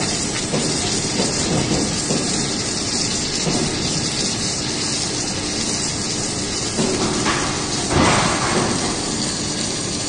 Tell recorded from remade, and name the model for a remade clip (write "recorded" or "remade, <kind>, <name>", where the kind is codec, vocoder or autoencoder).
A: recorded